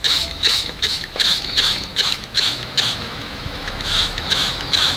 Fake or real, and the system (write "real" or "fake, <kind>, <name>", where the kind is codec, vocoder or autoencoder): fake, autoencoder, DAC-VAE